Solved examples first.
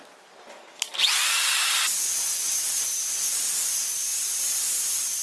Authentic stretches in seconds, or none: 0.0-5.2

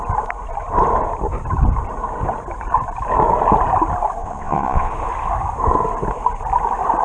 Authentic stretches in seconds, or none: 0.0-4.2; 4.9-7.0

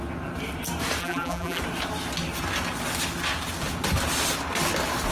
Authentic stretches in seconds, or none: 0.0-1.0; 1.6-5.1

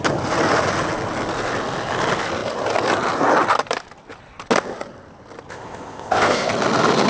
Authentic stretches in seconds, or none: 0.0-5.5; 6.5-7.1

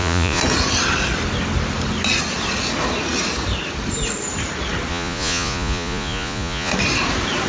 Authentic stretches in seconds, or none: 0.4-4.9; 6.7-7.5

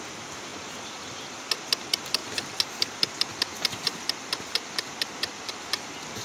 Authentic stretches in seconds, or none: 0.0-6.2

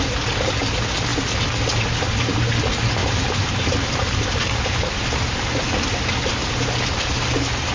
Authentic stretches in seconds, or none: 0.0-3.0; 5.6-7.7

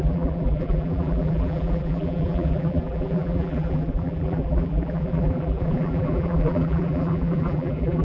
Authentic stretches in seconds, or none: none